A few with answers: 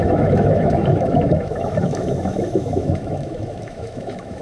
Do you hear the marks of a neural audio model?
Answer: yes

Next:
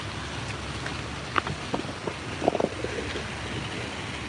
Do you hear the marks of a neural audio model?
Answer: no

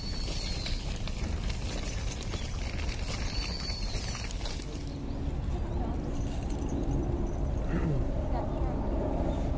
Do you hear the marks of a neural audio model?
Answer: no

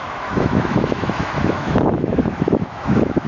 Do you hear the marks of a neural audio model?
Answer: yes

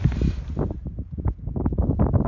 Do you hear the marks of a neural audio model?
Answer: no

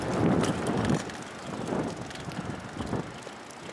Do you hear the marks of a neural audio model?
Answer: no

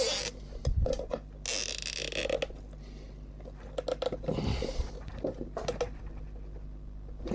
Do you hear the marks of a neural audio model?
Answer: no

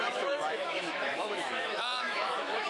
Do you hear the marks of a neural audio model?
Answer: yes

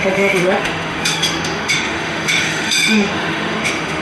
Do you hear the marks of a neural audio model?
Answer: yes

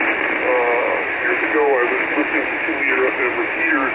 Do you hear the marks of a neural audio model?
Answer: no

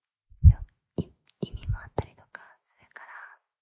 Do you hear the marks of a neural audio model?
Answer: yes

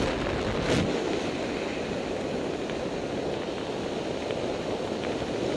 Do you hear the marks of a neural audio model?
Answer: no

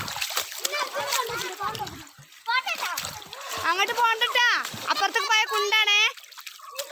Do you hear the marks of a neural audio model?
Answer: no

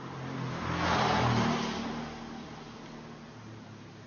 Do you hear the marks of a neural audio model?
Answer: no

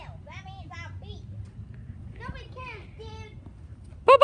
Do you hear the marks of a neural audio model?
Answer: no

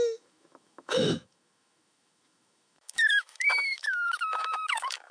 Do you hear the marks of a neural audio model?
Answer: yes